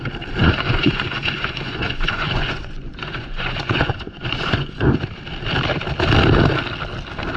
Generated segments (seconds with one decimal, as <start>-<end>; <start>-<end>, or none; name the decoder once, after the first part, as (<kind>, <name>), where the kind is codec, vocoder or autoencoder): 0.4-4.8 (vocoder, Vocos)